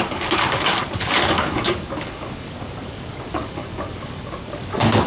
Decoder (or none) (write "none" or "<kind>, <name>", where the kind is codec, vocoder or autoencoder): codec, DAC